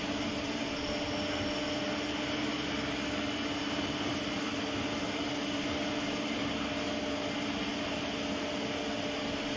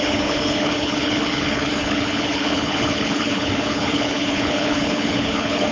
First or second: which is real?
first